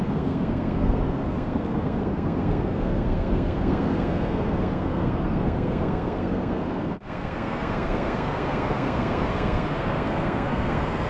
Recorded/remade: remade